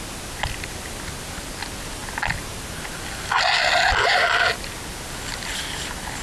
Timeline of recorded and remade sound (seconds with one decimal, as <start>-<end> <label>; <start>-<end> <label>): 0.0-6.2 recorded